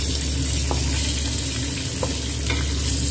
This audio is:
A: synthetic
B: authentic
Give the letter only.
B